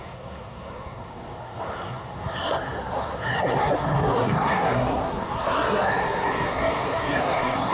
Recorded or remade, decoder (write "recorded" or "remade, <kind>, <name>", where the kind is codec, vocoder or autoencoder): remade, codec, SNAC